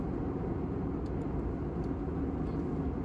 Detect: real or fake real